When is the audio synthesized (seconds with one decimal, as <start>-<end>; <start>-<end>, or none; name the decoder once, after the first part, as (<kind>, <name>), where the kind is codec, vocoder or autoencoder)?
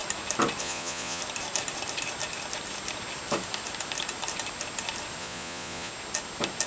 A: 0.6-1.2 (vocoder, Vocos); 5.2-5.9